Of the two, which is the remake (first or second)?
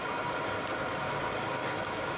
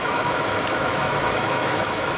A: second